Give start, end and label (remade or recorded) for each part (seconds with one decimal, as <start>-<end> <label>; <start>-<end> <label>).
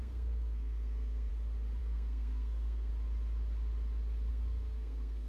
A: 0.0-1.3 remade; 1.3-1.8 recorded; 1.8-2.9 remade; 2.9-4.3 recorded; 4.3-5.3 remade